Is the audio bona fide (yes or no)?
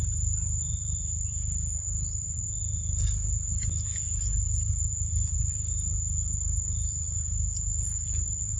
yes